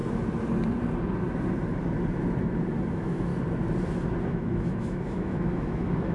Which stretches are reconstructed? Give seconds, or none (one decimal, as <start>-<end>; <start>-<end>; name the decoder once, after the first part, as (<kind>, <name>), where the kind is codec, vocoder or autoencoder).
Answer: 2.9-3.3 (autoencoder, DAC-VAE); 4.2-6.1